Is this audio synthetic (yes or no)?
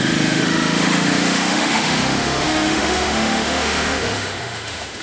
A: yes